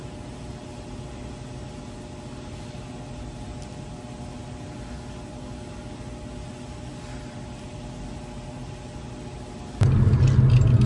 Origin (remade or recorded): recorded